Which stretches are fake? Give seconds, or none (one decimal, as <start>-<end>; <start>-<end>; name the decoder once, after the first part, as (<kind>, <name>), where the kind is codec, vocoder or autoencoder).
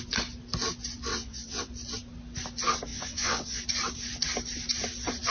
1.1-1.7 (vocoder, WaveNeXt); 2.9-3.6